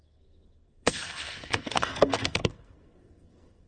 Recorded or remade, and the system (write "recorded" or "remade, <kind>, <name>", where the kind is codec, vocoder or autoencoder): remade, codec, SNAC